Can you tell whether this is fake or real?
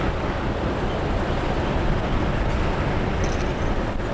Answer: real